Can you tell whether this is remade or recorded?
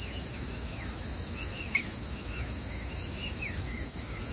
remade